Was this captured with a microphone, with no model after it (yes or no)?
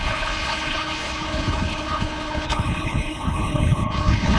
no